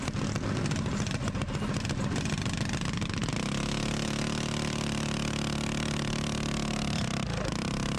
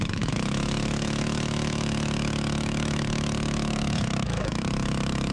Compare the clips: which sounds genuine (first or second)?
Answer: first